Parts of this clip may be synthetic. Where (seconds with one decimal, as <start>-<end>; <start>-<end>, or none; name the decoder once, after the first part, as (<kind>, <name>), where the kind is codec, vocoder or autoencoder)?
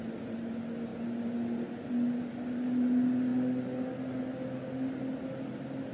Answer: none